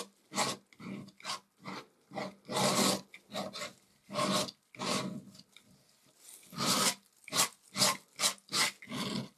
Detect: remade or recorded recorded